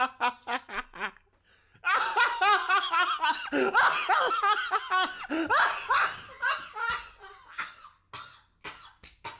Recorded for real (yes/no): yes